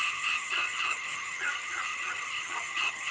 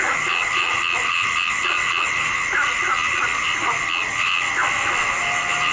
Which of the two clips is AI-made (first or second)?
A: first